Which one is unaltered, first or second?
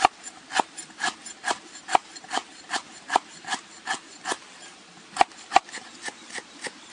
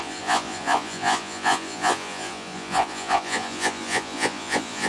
first